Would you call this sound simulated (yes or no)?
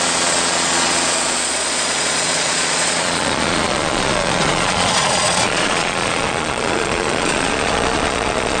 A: yes